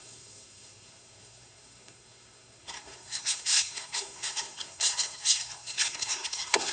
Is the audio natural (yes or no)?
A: no